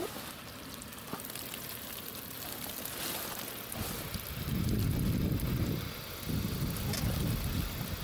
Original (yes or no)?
yes